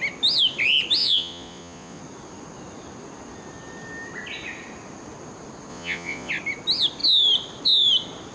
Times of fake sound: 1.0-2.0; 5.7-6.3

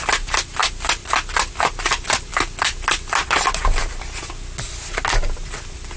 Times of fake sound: none

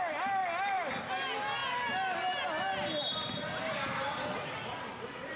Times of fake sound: none

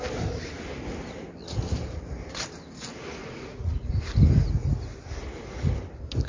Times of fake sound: 3.2-3.9